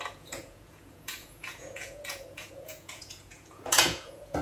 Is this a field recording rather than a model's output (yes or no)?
no